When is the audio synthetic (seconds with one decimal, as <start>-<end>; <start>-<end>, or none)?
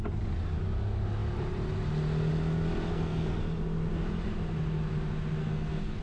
2.9-3.4; 5.4-6.0